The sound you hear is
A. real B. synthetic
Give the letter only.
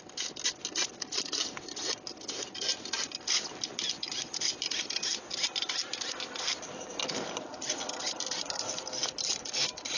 A